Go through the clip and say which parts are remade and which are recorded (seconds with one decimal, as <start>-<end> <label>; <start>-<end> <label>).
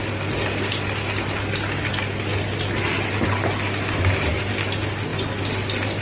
0.0-6.0 recorded